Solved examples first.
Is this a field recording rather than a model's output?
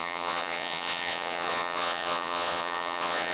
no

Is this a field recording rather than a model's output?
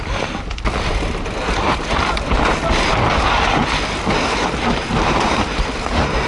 yes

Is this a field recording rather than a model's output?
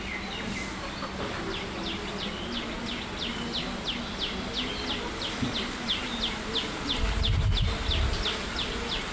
yes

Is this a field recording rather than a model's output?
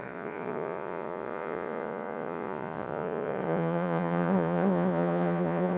no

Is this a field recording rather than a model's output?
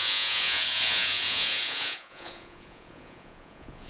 no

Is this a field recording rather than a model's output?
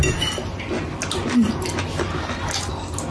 yes